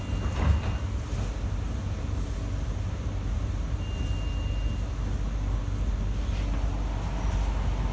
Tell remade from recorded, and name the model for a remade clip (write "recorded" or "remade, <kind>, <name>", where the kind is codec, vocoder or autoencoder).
recorded